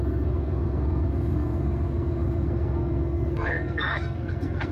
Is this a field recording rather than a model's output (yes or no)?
no